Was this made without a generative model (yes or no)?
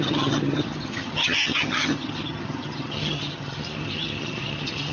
no